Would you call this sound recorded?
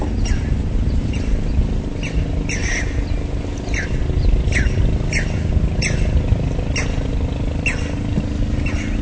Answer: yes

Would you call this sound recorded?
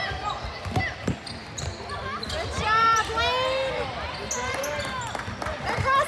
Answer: yes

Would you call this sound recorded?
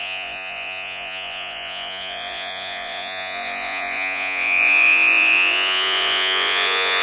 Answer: no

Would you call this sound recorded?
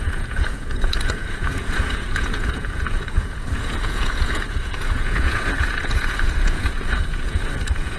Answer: no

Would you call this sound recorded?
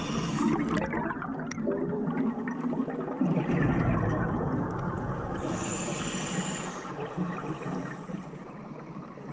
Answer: yes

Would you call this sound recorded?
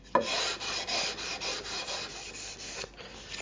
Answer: yes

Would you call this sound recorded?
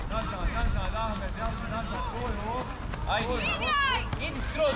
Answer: yes